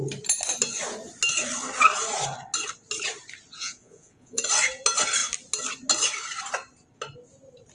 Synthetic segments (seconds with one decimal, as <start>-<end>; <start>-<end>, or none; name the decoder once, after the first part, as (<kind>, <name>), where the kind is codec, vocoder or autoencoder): 3.6-4.4 (vocoder, Vocos)